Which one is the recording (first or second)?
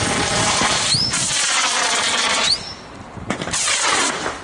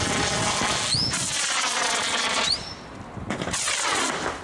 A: second